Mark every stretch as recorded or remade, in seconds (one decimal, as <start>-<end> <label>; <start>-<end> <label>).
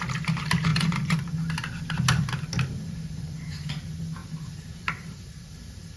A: 0.0-0.7 recorded; 0.7-1.4 remade; 1.4-6.0 recorded